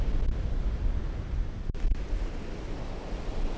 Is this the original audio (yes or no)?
yes